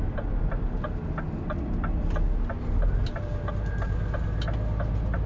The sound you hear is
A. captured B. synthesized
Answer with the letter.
A